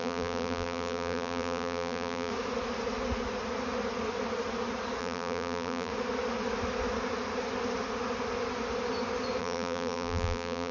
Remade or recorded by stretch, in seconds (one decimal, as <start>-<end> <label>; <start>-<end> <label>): 0.0-2.3 remade; 2.3-5.0 recorded; 5.0-5.9 remade; 5.9-9.4 recorded; 9.4-10.7 remade